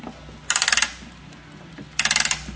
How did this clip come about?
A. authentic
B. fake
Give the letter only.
A